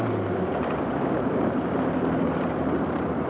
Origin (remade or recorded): remade